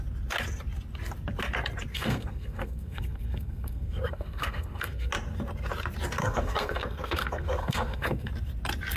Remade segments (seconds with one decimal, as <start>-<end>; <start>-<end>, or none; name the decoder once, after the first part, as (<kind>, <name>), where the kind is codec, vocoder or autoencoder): 1.9-5.1 (codec, SNAC); 6.2-8.3